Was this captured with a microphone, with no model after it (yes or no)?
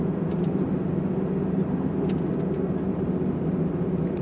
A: yes